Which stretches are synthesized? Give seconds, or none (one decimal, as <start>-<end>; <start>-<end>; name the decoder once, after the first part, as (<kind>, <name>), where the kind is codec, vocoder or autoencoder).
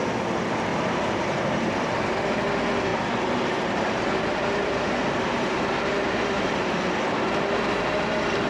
0.7-2.0 (vocoder, BigVGAN v2); 2.9-6.9